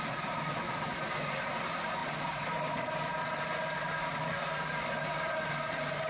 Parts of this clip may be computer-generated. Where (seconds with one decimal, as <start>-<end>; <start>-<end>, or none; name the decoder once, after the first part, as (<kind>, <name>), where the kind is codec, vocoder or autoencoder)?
none